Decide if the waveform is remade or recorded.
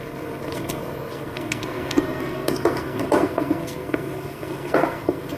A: remade